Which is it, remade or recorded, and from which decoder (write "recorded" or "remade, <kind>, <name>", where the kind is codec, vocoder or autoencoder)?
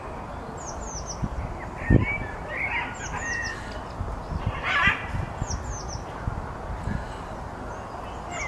recorded